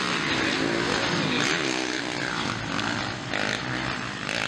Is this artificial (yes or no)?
no